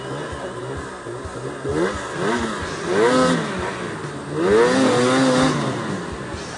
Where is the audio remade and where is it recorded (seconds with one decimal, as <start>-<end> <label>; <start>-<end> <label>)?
0.0-6.6 recorded